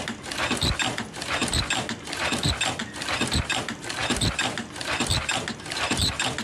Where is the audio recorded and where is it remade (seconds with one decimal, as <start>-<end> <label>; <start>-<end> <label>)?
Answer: 0.0-6.4 recorded